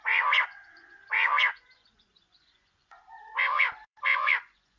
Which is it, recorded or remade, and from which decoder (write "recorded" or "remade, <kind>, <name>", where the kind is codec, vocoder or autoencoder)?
remade, vocoder, Vocos